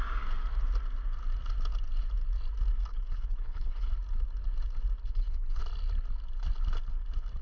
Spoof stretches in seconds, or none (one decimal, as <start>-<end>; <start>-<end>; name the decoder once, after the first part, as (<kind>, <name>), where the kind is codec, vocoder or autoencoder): 2.9-3.9 (codec, HILCodec); 5.0-5.6